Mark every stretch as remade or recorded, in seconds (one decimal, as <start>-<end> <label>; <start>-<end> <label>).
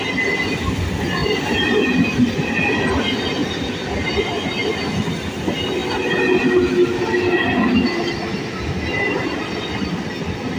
0.0-10.6 recorded